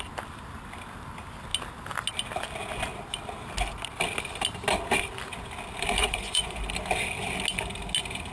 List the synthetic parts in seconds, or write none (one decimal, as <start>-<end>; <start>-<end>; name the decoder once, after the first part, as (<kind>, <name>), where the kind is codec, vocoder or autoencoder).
6.0-6.6 (vocoder, Vocos)